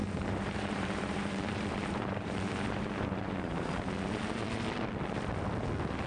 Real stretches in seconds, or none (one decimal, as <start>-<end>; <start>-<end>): 3.7-6.1